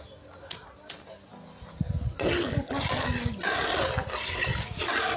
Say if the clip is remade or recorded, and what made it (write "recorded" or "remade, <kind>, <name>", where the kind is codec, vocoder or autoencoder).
recorded